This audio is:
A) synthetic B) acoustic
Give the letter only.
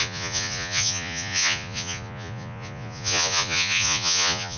A